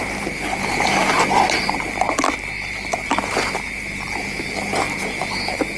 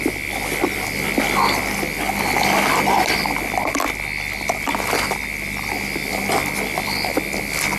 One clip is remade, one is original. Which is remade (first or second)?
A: first